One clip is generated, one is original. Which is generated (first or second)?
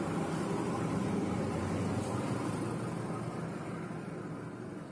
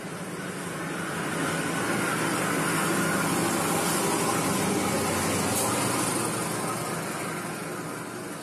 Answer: first